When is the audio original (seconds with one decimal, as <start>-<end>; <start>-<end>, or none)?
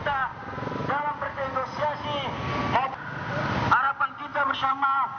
0.0-5.2